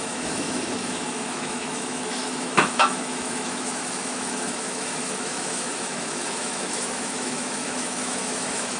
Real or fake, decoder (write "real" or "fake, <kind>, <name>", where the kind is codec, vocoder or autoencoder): fake, autoencoder, DAC-VAE